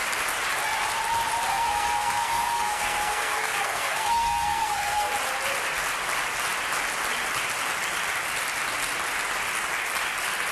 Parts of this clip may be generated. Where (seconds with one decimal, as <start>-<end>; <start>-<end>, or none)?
1.5-5.1